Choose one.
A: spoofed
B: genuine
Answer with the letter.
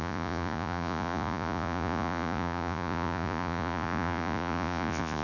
A